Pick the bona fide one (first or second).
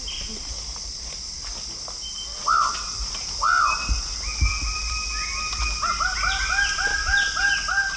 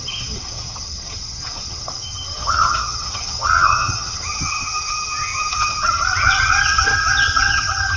first